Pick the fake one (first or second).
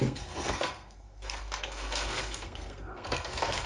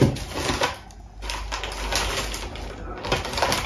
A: first